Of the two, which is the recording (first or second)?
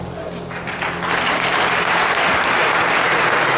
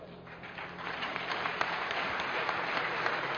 first